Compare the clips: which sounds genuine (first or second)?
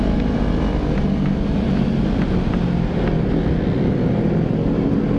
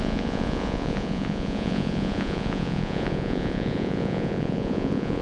first